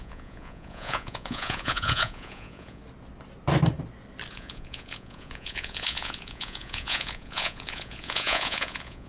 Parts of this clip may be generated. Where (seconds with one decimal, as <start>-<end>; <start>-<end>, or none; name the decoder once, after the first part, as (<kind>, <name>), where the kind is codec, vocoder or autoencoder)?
0.0-2.8 (vocoder, Vocos); 4.3-9.1